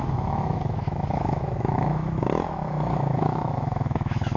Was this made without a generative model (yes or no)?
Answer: no